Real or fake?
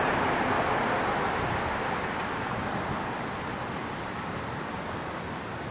real